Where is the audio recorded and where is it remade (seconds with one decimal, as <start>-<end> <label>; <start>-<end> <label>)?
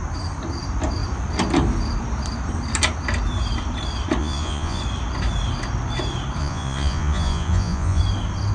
0.0-4.2 recorded; 4.2-4.8 remade; 4.8-6.4 recorded; 6.4-8.0 remade; 8.0-8.5 recorded